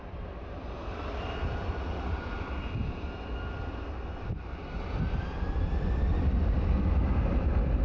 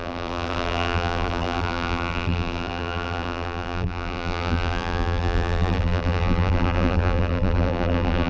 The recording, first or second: first